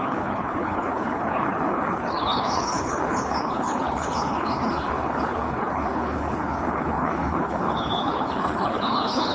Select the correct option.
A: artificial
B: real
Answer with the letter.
A